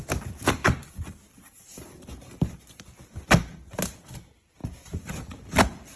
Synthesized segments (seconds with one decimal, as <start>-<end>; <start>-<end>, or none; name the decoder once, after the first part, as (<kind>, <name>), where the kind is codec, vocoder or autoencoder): 0.0-6.0 (vocoder, BigVGAN v2)